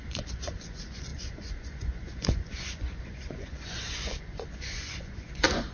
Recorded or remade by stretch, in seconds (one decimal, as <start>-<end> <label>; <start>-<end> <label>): 0.0-5.7 remade